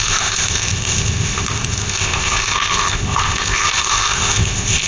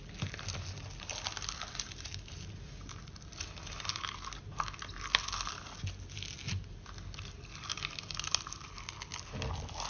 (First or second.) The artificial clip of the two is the first